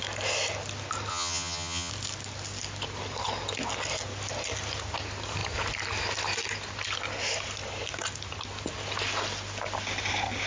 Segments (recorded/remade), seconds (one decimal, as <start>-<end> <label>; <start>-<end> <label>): 0.0-1.1 recorded; 1.1-1.9 remade; 1.9-10.5 recorded